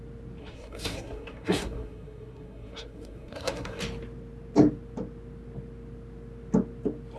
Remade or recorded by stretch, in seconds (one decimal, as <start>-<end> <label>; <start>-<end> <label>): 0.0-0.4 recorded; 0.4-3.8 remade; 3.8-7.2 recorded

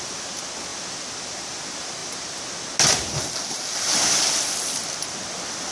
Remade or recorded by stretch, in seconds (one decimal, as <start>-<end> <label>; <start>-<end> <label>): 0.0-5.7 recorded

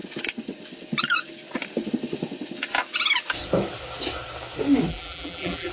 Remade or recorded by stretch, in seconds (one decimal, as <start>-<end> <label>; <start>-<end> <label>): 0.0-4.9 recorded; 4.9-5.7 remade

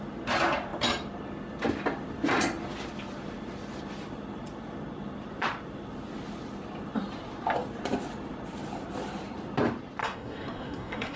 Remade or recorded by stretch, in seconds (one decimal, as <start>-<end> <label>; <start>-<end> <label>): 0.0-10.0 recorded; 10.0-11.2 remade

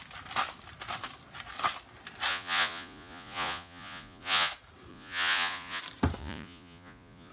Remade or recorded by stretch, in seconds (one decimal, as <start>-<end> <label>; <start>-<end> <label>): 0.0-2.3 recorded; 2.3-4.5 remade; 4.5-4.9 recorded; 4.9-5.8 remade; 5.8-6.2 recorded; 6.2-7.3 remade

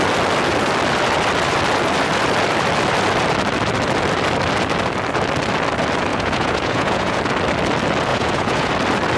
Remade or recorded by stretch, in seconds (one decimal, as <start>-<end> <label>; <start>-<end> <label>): 0.0-6.1 recorded; 6.1-7.2 remade; 7.2-8.1 recorded; 8.1-8.7 remade; 8.7-9.2 recorded

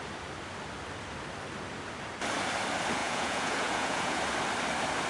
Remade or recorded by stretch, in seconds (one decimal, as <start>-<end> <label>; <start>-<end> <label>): 0.0-3.0 recorded; 3.0-4.2 remade; 4.2-5.1 recorded

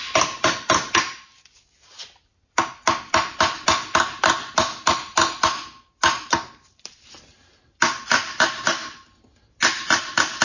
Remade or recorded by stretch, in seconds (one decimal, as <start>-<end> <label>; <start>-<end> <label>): 0.0-10.4 recorded